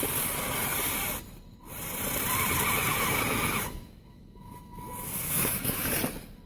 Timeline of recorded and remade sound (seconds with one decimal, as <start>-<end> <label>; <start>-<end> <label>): 0.0-2.9 recorded; 2.9-5.9 remade; 5.9-6.5 recorded